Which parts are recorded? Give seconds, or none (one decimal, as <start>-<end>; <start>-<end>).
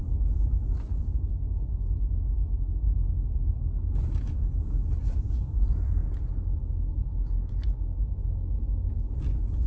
0.6-3.3; 6.0-6.7; 8.2-8.9